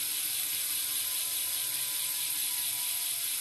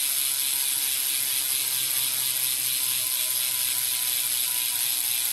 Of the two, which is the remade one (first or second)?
first